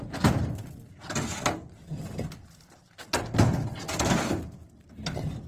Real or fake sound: real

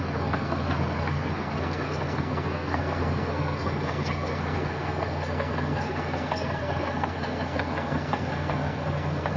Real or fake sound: fake